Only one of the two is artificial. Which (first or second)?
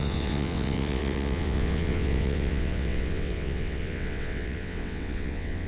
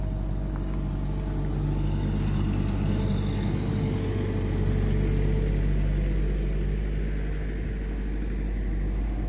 first